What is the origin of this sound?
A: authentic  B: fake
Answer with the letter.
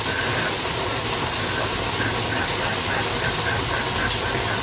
A